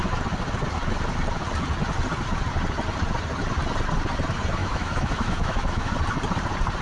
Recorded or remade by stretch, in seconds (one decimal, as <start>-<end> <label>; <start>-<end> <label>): 0.0-4.6 recorded; 4.6-5.9 remade; 5.9-6.8 recorded